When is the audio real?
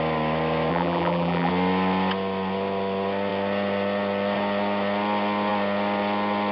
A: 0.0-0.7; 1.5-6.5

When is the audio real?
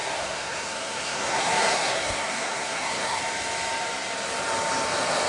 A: 3.2-5.3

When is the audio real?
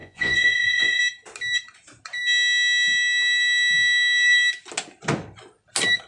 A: 1.0-6.1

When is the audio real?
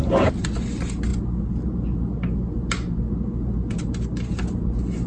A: 0.0-5.1